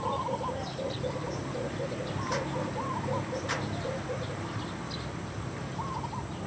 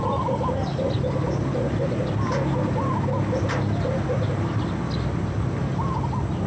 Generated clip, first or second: first